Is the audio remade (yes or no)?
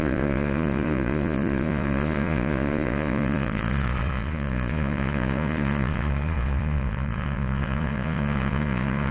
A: yes